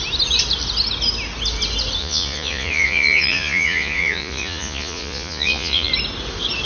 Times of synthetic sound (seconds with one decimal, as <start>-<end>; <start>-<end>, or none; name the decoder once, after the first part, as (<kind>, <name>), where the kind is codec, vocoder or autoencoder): 2.0-5.9 (vocoder, Vocos)